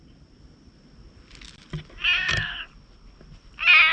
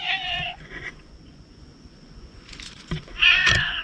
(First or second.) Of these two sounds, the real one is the first